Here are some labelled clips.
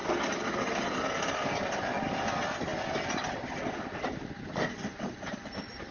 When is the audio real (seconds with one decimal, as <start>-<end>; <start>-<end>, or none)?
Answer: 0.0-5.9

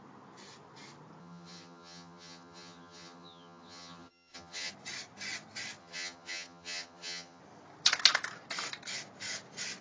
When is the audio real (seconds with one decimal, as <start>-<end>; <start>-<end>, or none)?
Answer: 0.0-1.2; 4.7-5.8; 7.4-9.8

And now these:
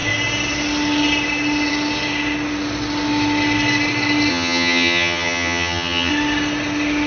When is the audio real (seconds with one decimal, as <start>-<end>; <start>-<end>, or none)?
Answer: 0.0-4.3; 6.1-7.1

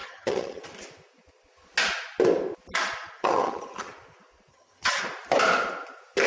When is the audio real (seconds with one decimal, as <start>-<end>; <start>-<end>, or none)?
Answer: 0.6-3.2; 3.9-4.5; 5.0-6.3